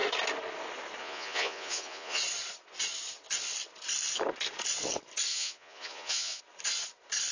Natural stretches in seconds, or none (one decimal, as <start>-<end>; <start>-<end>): 0.0-1.0; 2.2-5.3; 6.4-7.3